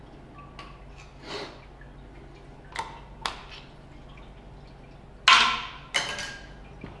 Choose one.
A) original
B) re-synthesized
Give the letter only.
A